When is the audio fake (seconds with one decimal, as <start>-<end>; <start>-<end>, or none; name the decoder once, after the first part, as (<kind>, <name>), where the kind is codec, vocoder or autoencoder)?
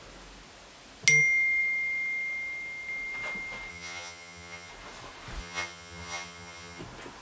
3.7-4.7 (vocoder, HiFi-GAN); 5.4-6.8